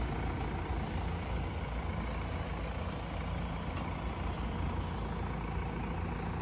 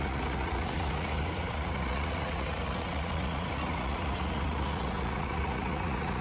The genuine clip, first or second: first